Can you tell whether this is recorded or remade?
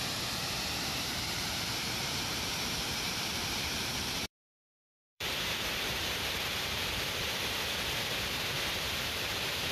remade